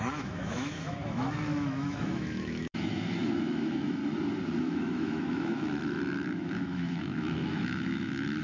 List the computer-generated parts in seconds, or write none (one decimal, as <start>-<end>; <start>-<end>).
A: 0.0-4.0; 4.6-8.4